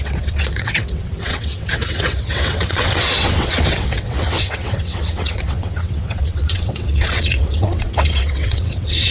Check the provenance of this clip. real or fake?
fake